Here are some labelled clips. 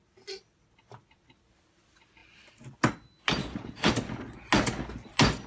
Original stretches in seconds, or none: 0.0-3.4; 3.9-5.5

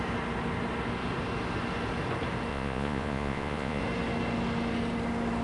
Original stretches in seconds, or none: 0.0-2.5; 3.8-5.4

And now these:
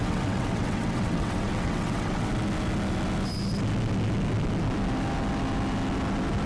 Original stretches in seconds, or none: 2.3-6.5

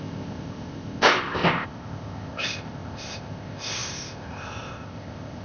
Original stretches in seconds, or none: none